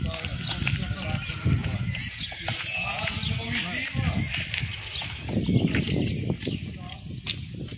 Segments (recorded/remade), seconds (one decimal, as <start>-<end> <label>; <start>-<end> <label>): 0.0-1.6 recorded; 1.6-3.1 remade; 3.1-7.8 recorded